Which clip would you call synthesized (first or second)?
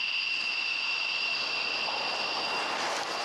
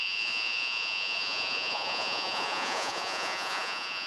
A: second